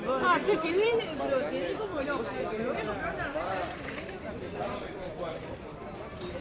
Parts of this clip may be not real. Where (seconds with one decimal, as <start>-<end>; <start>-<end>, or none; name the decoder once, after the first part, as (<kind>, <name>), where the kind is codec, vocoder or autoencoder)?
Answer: 0.4-1.0 (vocoder, BigVGAN v2); 1.9-5.1